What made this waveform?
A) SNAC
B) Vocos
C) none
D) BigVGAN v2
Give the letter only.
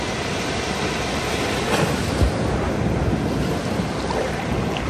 C